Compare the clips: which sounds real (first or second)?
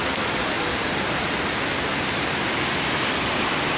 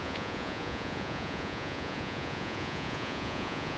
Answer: first